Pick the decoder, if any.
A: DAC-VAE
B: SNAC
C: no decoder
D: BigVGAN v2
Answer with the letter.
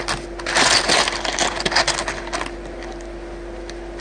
C